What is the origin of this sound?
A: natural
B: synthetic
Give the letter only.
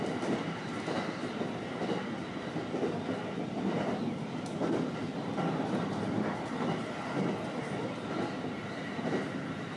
A